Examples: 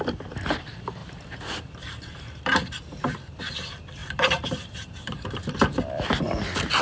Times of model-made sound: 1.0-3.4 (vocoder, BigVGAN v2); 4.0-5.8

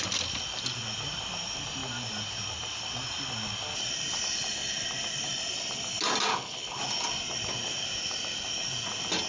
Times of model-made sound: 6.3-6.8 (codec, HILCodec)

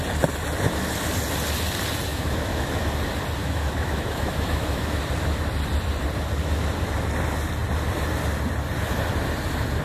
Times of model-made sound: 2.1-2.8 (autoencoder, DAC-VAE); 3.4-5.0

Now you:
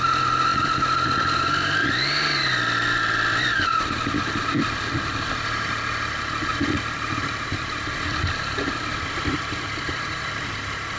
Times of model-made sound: 6.5-10.3 (vocoder, BigVGAN v2)

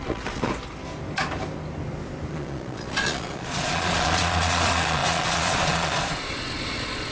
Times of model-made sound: 0.0-0.5 (vocoder, Vocos); 2.3-7.1

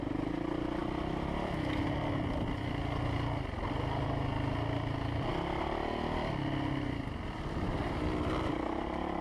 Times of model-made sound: none

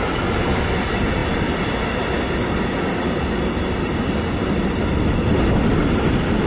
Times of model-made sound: none